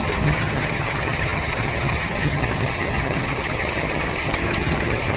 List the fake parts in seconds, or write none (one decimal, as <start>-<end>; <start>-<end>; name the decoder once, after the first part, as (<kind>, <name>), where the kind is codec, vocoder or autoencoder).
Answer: 0.0-5.2 (vocoder, HiFi-GAN)